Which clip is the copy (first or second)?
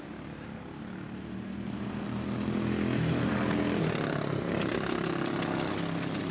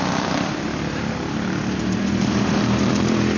second